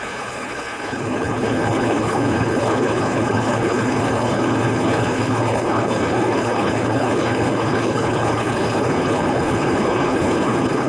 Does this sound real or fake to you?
fake